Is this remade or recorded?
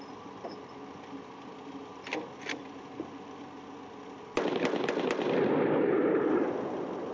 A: recorded